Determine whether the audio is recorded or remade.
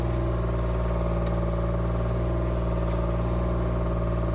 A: recorded